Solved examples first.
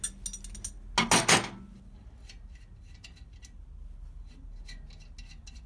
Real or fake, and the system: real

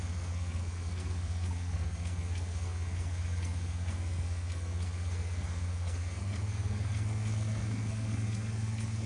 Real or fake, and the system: fake, codec, SNAC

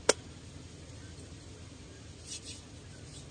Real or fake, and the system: real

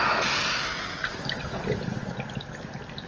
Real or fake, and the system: real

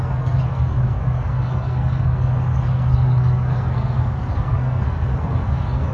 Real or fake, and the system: fake, codec, SNAC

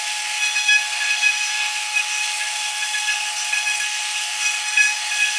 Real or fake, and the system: fake, codec, SNAC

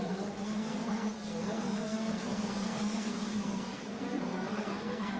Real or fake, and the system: fake, codec, SNAC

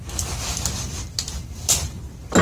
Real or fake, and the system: real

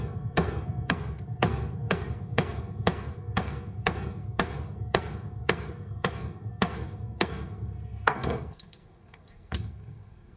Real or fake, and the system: fake, codec, SNAC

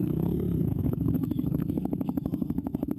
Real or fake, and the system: fake, codec, SNAC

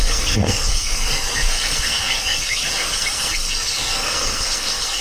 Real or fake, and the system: fake, codec, SNAC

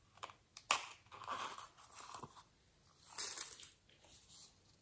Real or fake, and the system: real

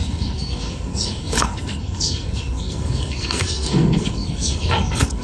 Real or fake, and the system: fake, codec, SNAC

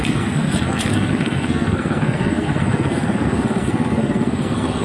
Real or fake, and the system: fake, codec, SNAC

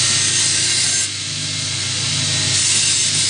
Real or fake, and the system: real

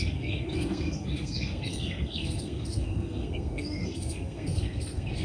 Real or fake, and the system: fake, codec, SNAC